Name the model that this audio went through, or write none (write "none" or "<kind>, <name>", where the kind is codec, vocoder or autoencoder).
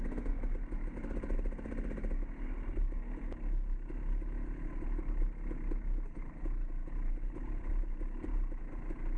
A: none